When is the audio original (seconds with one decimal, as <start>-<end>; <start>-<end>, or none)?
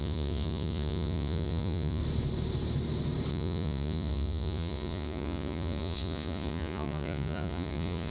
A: 2.0-3.3